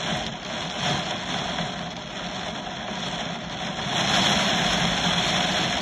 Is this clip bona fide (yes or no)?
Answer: yes